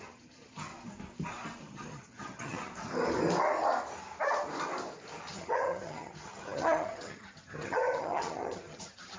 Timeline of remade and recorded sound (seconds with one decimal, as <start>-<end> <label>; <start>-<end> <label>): 0.0-0.7 remade; 0.7-1.6 recorded; 1.6-2.7 remade; 2.7-5.3 recorded; 5.3-9.2 remade